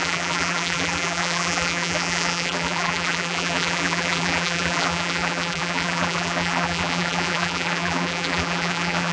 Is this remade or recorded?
remade